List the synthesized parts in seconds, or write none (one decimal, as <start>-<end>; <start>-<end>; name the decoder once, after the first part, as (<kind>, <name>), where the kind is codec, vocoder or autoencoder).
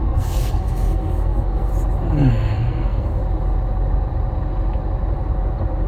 0.0-1.7 (codec, SNAC); 2.3-3.2